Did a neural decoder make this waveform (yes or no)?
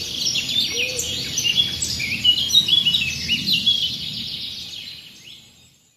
no